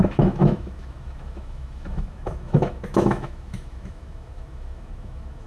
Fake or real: fake